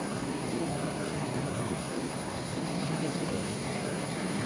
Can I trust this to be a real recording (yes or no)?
no